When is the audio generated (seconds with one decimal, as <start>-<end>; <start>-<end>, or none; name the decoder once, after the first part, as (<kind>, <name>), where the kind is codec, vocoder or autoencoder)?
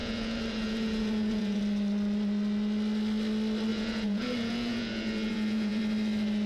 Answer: 0.0-1.6 (vocoder, Vocos); 3.7-5.8